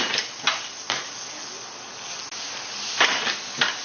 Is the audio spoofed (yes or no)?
no